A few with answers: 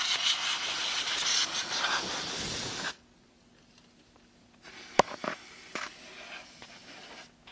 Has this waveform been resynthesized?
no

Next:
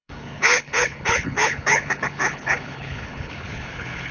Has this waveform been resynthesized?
yes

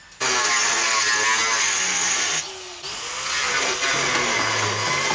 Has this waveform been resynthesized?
no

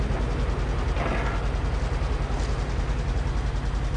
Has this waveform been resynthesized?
no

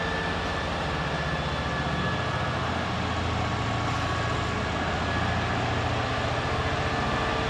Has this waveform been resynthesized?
no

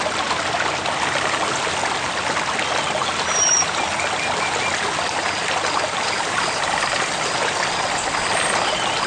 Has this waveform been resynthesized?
no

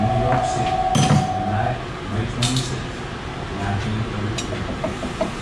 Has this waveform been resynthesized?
no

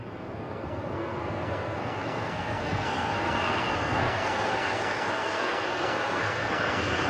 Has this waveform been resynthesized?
yes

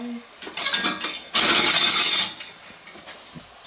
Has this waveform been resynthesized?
no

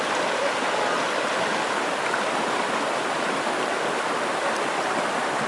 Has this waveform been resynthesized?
yes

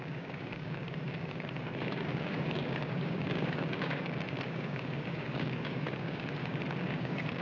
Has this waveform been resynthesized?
yes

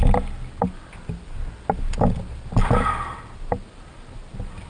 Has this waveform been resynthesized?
no